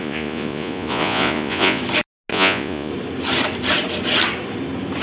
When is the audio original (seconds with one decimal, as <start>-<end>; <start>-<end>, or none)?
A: 1.8-2.3; 2.9-5.0